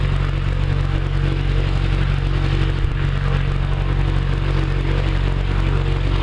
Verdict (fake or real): real